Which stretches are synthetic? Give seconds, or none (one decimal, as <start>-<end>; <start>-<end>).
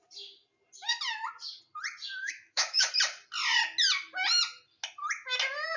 2.2-2.9